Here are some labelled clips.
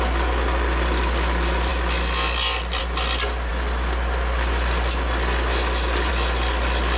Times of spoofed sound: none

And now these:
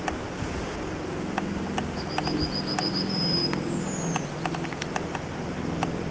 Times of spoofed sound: none

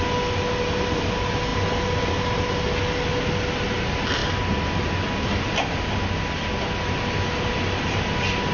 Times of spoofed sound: none

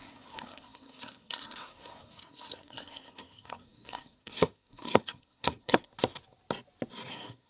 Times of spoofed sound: 0.0-5.9 (codec, SNAC); 7.1-7.5

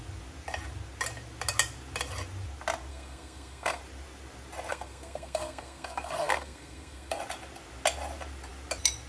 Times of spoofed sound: 2.9-3.8 (codec, SNAC); 4.7-7.2